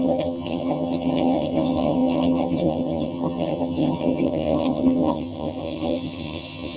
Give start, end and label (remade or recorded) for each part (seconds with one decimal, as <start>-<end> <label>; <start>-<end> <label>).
0.0-6.8 remade